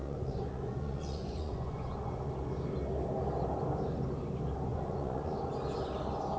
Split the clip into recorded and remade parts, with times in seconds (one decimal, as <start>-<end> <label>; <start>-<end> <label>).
0.0-2.3 remade; 2.3-4.7 recorded; 4.7-5.4 remade; 5.4-6.4 recorded